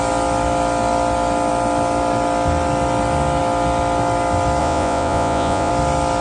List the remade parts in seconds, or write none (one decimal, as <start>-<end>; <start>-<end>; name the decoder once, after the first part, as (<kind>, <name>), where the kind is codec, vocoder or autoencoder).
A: 4.6-5.7 (vocoder, Vocos)